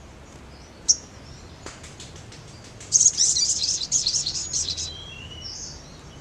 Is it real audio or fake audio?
fake